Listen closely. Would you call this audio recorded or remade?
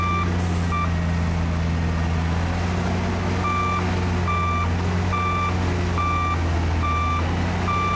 recorded